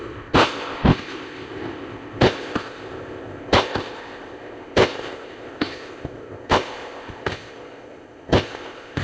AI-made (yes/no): yes